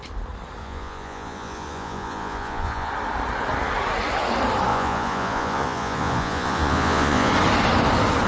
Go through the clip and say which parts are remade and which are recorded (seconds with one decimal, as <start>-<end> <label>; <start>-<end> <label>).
0.0-0.6 recorded; 0.6-2.9 remade; 2.9-4.7 recorded; 4.7-7.3 remade; 7.3-8.3 recorded

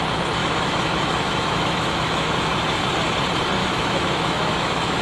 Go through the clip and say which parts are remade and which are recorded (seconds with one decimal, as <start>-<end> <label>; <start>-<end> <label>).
0.0-0.4 recorded; 0.4-2.8 remade; 2.8-3.6 recorded; 3.6-5.0 remade

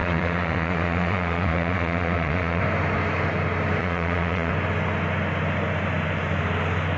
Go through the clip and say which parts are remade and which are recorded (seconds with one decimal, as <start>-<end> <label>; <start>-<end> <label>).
0.0-2.6 remade; 2.6-3.8 recorded; 3.8-4.5 remade; 4.5-7.0 recorded

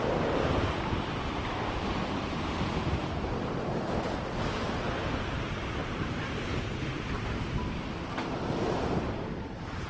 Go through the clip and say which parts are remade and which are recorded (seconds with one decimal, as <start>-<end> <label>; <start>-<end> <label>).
0.0-3.0 recorded; 3.0-3.5 remade; 3.5-5.8 recorded; 5.8-7.2 remade; 7.2-9.9 recorded

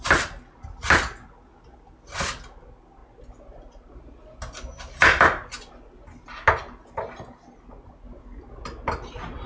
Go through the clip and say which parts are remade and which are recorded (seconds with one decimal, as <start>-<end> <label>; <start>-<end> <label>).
0.0-9.5 recorded

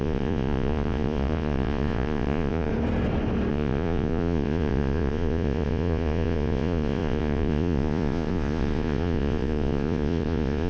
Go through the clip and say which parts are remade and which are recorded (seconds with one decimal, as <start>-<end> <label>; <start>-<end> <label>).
0.0-2.7 remade; 2.7-3.5 recorded; 3.5-10.7 remade

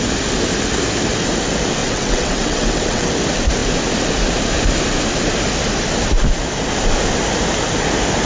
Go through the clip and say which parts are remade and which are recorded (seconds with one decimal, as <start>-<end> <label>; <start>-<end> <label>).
0.0-1.8 recorded; 1.8-3.1 remade; 3.1-8.3 recorded

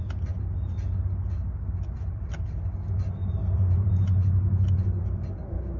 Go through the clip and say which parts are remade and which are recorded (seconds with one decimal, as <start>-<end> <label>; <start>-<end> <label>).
0.0-3.2 recorded; 3.2-3.9 remade; 3.9-5.8 recorded